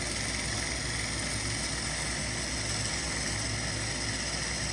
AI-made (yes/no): no